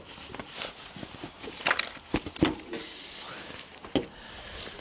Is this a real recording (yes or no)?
yes